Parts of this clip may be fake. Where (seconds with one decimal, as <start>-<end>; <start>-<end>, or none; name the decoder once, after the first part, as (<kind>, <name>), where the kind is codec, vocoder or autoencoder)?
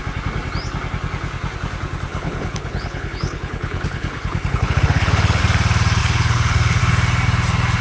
2.1-5.4 (codec, HILCodec); 6.0-6.8